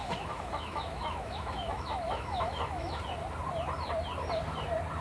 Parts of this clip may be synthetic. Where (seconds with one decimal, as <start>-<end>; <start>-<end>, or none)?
0.0-3.0